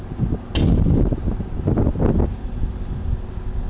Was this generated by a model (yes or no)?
no